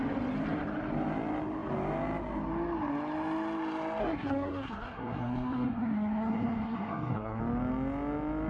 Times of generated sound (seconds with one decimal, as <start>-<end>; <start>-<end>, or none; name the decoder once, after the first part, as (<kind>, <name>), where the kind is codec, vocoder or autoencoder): 4.0-7.4 (codec, SNAC)

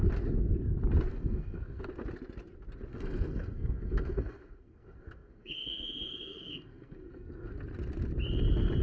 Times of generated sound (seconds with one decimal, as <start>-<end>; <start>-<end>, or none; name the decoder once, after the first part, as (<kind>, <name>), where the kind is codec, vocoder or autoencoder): 1.1-1.8 (codec, SNAC); 2.9-7.5

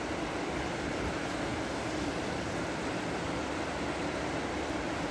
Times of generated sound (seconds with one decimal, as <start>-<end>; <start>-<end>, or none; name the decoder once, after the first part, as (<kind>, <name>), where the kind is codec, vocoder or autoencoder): none

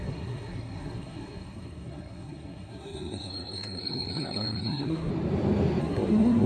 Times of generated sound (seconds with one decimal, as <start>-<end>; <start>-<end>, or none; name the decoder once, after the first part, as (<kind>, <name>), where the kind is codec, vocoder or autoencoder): 0.0-5.1 (codec, SNAC); 5.8-6.5

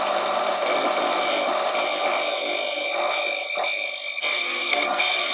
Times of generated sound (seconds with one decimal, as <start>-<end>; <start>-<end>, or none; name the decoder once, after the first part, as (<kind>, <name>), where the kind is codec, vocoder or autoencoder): 4.3-5.3 (codec, SNAC)